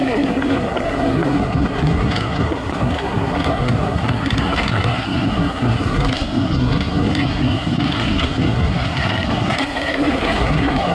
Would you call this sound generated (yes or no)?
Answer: yes